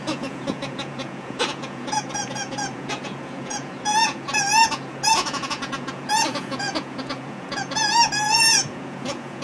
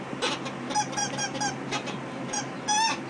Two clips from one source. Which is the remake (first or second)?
first